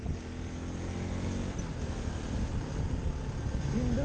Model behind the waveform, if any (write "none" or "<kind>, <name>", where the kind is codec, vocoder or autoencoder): none